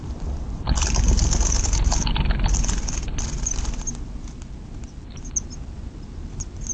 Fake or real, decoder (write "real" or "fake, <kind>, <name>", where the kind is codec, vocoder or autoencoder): real